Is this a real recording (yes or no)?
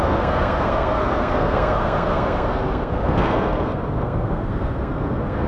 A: no